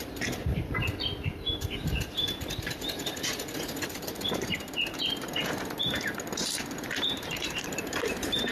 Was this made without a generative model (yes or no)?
no